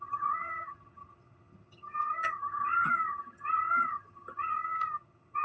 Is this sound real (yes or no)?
no